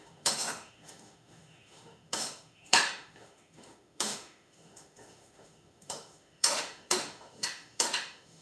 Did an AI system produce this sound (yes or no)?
yes